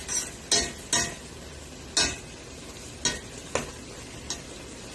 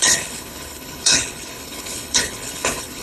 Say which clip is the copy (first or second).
second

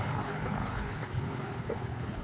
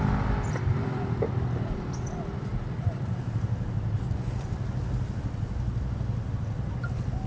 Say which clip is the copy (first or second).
first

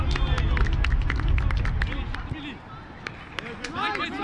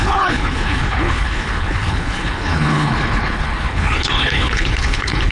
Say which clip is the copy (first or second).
second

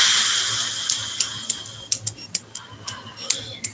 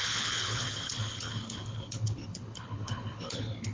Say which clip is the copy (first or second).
second